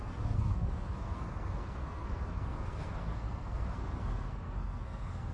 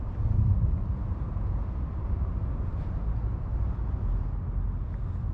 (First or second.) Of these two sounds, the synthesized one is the first